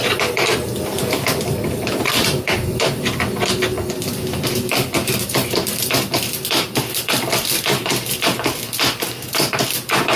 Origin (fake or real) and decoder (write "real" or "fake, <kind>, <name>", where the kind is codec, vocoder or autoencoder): fake, vocoder, BigVGAN v2